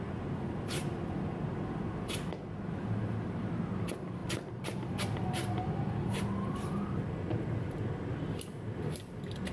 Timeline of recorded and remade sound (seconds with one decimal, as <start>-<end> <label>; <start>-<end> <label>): 0.0-4.2 recorded; 4.2-9.5 remade